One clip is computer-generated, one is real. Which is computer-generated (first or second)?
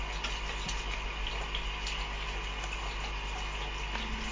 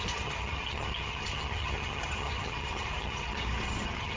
second